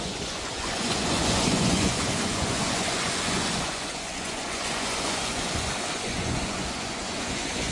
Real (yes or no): no